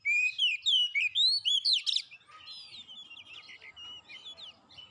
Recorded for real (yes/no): yes